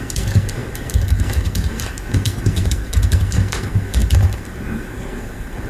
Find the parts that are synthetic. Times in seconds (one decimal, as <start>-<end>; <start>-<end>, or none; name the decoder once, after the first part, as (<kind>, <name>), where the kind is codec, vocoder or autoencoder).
0.0-5.7 (codec, SNAC)